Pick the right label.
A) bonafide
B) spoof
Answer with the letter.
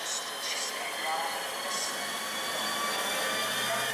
A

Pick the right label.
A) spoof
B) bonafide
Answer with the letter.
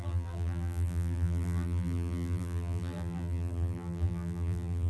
A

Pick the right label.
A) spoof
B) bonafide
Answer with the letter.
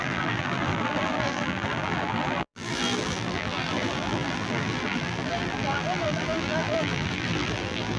A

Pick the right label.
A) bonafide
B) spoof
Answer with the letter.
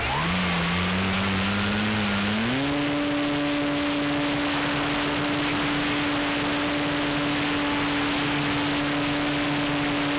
A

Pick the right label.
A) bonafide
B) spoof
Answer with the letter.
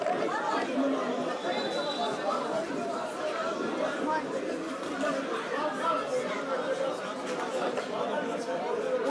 A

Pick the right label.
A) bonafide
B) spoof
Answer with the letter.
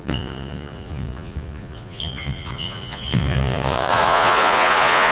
B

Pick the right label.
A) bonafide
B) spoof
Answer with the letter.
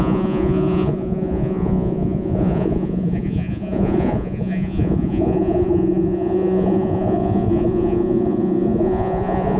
B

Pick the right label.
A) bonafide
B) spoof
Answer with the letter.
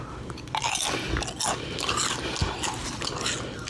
A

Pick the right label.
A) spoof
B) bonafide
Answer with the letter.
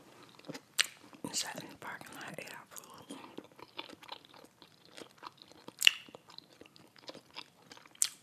A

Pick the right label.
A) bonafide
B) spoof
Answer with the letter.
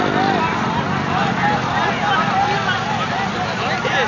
A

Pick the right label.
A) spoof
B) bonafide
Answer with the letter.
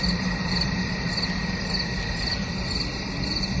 B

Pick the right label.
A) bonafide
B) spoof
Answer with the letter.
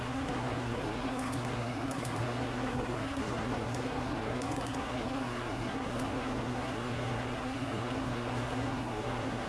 B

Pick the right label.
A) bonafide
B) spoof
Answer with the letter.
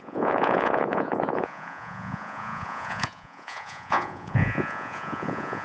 B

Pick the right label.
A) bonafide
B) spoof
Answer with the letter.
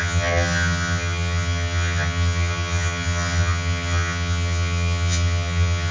B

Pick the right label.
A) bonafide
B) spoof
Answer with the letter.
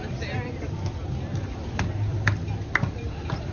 A